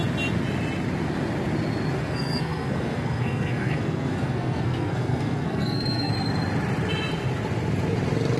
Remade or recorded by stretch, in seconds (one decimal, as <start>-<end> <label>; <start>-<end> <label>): 0.0-2.0 recorded; 2.0-6.1 remade; 6.1-8.4 recorded